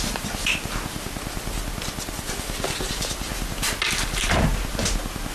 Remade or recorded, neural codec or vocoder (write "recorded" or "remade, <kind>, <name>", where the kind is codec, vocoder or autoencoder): recorded